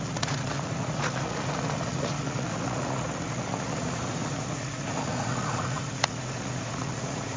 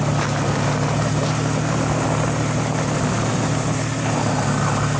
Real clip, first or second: second